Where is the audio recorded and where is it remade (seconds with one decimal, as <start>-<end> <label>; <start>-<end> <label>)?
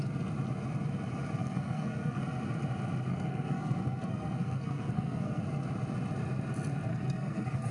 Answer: 0.0-1.4 recorded; 1.4-2.2 remade; 2.2-3.1 recorded; 3.1-5.4 remade; 5.4-6.9 recorded; 6.9-7.7 remade